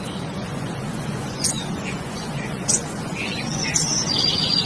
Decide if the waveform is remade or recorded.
remade